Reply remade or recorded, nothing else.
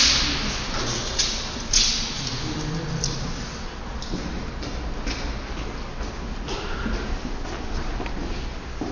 recorded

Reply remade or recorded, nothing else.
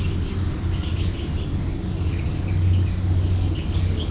remade